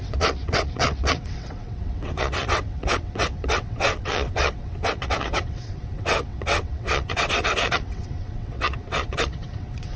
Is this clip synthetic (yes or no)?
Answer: yes